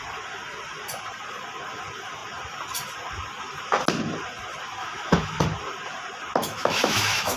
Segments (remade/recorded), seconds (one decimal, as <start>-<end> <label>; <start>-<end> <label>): 0.0-4.8 recorded; 4.8-5.4 remade; 5.4-6.4 recorded; 6.4-7.4 remade